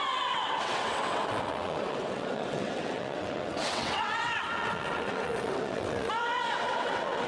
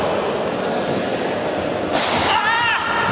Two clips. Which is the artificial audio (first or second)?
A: first